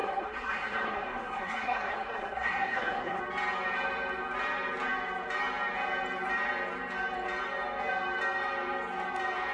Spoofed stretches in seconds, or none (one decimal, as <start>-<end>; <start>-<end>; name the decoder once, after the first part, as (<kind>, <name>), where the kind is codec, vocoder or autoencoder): 0.0-3.2 (codec, SNAC)